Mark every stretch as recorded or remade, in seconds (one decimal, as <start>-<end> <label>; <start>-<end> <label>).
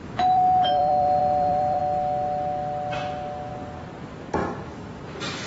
0.0-1.8 remade; 1.8-4.4 recorded; 4.4-5.5 remade